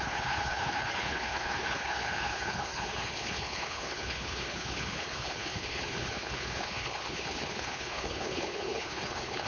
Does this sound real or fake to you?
fake